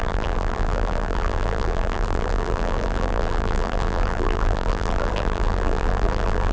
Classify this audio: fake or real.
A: fake